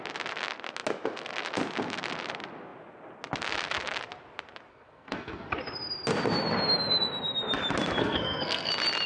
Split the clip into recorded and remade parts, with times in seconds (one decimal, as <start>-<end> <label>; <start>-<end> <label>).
0.0-4.7 recorded; 4.7-5.5 remade; 5.5-8.0 recorded; 8.0-8.7 remade; 8.7-9.1 recorded